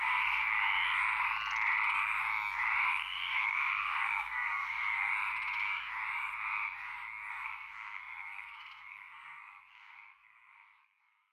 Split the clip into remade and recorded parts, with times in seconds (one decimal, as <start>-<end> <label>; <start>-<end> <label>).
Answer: 0.0-0.4 remade; 0.4-2.9 recorded; 2.9-5.1 remade; 5.1-7.3 recorded; 7.3-11.3 remade